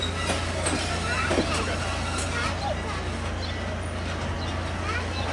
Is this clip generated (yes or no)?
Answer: no